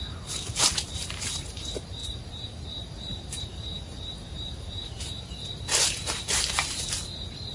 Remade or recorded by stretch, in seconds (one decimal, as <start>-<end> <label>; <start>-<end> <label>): 0.0-7.5 remade